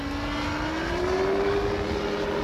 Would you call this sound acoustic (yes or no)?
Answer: yes